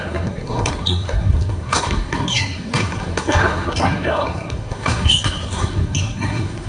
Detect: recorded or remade remade